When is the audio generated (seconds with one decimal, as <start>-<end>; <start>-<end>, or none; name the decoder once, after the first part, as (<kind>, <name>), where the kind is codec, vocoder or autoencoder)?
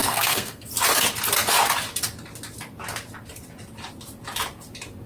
0.0-0.7 (codec, SNAC)